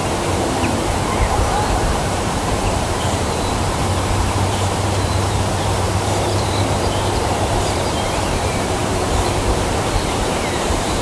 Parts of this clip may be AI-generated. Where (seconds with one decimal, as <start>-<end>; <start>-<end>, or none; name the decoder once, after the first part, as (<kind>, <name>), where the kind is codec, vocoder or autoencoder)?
0.0-11.0 (vocoder, BigVGAN v2)